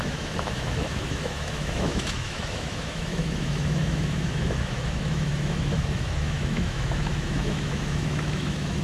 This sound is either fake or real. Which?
fake